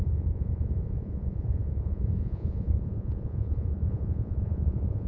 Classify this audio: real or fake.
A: fake